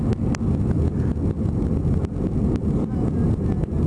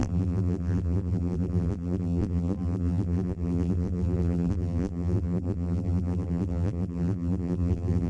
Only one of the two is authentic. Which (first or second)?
first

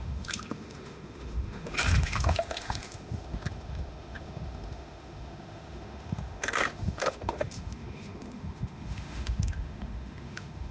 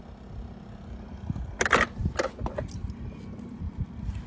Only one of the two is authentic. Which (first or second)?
second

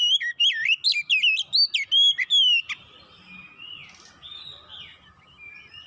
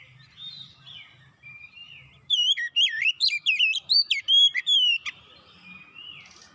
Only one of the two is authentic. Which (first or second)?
first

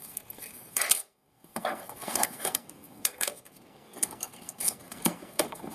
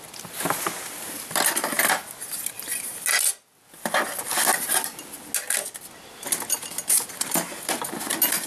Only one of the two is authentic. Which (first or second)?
second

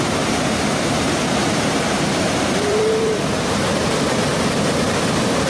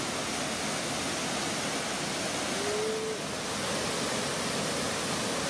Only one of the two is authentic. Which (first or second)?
second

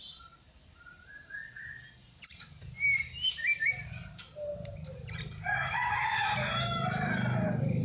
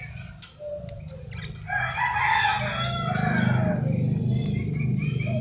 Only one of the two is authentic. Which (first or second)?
second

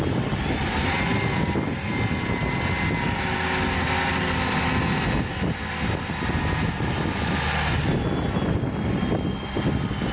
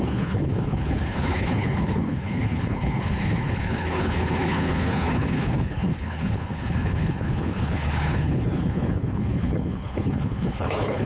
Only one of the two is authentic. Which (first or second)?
first